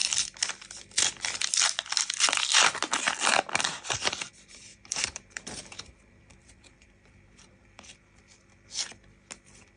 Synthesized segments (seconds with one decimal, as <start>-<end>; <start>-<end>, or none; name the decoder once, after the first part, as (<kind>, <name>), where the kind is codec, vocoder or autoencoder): 4.7-8.2 (vocoder, BigVGAN v2)